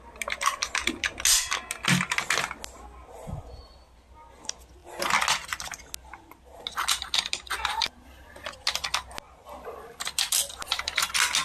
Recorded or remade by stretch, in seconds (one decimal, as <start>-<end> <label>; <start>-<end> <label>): 0.0-11.4 recorded